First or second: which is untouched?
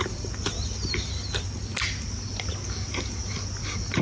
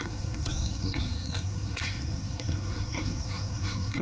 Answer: first